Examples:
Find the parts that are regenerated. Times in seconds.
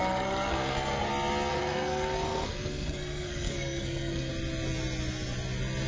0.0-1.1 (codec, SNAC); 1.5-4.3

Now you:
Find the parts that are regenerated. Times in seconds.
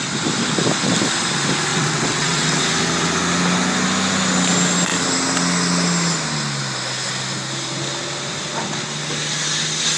1.7-2.6 (vocoder, WaveNeXt)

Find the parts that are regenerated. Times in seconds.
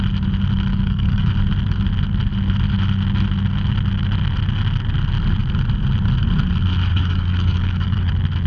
0.7-1.3 (codec, DAC); 6.9-8.1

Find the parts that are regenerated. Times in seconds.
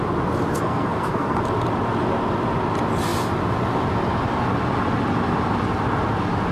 0.5-1.4 (codec, SNAC)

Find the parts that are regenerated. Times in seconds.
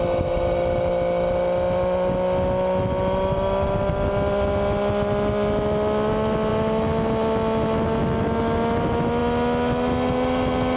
none